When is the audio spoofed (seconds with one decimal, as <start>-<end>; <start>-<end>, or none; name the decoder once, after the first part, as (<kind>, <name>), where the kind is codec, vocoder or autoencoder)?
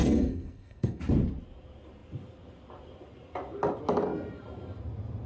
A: 0.0-1.0 (codec, SNAC)